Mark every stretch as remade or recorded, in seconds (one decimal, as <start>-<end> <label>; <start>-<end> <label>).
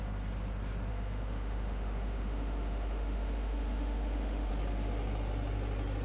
0.0-0.9 recorded; 0.9-4.5 remade; 4.5-6.0 recorded